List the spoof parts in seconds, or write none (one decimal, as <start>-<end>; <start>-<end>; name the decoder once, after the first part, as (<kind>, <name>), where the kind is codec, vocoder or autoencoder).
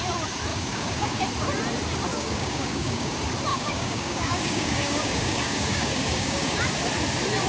0.5-1.2 (codec, DAC); 2.1-3.1; 3.5-6.6